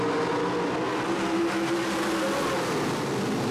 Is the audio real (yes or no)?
yes